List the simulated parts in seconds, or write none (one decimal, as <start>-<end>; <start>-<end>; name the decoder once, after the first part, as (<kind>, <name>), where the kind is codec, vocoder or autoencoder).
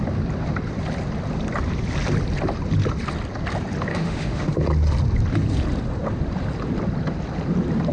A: 3.9-4.5 (autoencoder, DAC-VAE)